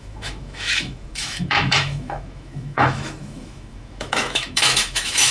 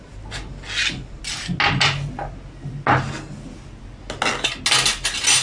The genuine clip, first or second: second